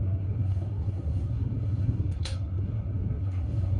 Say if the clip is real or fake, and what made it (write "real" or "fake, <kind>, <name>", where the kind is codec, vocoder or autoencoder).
fake, codec, SNAC